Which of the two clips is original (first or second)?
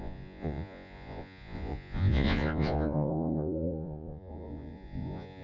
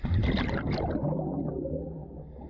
second